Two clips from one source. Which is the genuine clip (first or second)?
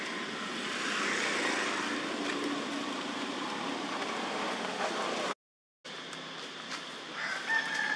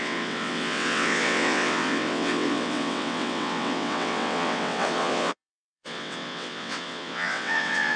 first